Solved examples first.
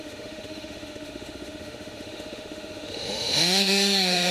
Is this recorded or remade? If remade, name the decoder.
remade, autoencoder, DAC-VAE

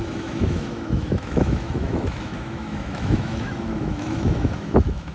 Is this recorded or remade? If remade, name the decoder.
remade, autoencoder, DAC-VAE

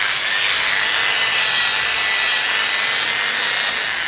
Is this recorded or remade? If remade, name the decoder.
recorded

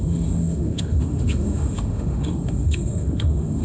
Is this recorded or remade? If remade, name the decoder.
remade, autoencoder, DAC-VAE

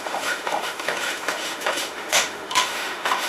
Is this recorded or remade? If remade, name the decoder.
remade, autoencoder, DAC-VAE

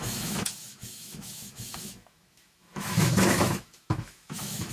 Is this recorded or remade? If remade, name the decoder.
remade, autoencoder, DAC-VAE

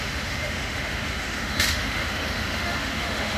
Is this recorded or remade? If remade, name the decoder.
remade, autoencoder, DAC-VAE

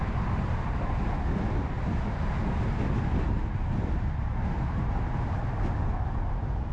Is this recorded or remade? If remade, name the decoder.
recorded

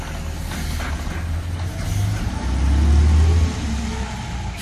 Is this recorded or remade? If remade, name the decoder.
recorded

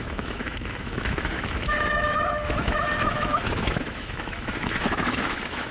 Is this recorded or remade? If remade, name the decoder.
remade, autoencoder, DAC-VAE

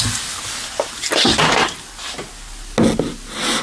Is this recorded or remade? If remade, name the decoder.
recorded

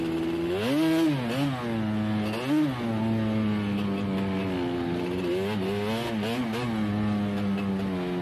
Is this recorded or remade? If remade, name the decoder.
recorded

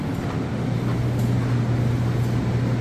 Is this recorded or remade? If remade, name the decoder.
recorded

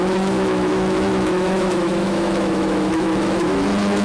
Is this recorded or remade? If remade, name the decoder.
remade, autoencoder, DAC-VAE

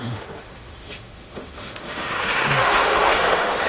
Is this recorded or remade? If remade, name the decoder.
remade, autoencoder, DAC-VAE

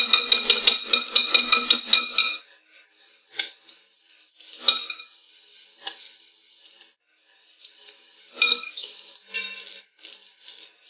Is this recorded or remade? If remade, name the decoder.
recorded